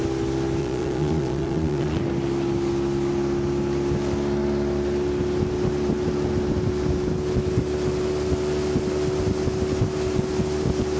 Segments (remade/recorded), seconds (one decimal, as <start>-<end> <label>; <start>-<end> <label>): 0.0-0.6 recorded; 0.6-2.0 remade; 2.0-11.0 recorded